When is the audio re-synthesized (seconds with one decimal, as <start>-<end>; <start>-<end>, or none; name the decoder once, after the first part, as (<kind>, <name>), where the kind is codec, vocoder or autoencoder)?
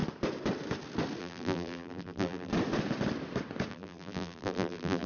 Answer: 1.2-2.5 (vocoder, BigVGAN v2); 3.7-5.1